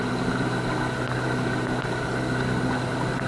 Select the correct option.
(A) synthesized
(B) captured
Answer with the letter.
B